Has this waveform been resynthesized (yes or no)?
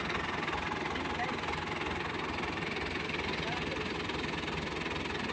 no